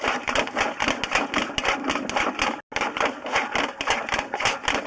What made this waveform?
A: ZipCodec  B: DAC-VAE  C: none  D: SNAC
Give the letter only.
C